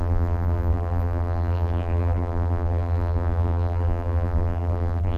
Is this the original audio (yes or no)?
no